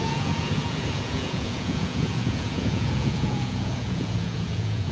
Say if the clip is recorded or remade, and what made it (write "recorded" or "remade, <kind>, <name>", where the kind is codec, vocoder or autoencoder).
remade, vocoder, Vocos